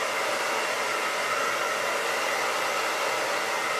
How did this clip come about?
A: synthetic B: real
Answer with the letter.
B